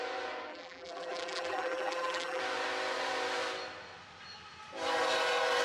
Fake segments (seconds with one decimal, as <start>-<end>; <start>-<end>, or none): 0.5-2.4